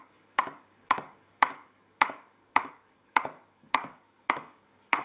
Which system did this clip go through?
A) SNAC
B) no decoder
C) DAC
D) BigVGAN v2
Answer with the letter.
C